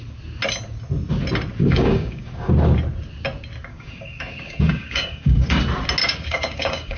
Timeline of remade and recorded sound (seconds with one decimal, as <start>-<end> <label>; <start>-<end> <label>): 0.0-1.6 recorded; 1.6-2.5 remade; 2.5-3.7 recorded; 3.7-5.6 remade; 5.6-6.0 recorded; 6.0-7.0 remade